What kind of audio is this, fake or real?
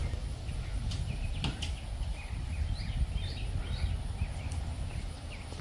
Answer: real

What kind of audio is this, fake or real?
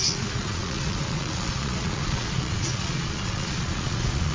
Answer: fake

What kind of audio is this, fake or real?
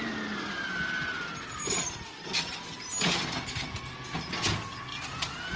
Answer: real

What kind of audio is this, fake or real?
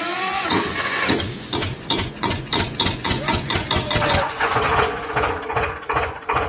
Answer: fake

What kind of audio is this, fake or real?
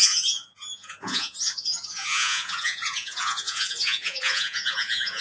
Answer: fake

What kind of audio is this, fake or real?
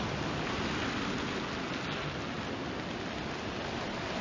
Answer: real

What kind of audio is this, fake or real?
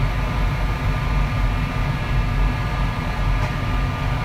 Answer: real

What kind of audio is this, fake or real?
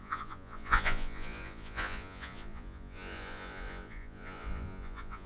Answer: fake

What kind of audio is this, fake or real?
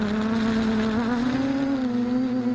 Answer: real